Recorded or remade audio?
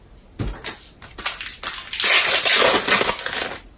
recorded